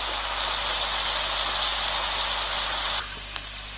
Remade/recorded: recorded